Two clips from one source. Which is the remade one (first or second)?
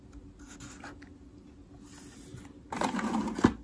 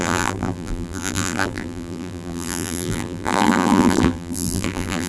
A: second